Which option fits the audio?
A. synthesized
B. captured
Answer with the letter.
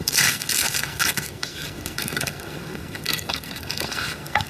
A